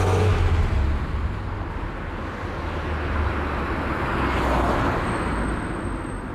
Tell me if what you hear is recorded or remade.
recorded